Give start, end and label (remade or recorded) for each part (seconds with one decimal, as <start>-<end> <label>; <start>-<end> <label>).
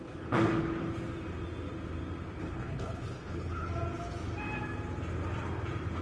0.0-0.5 remade; 0.5-2.4 recorded; 2.4-3.7 remade; 3.7-6.0 recorded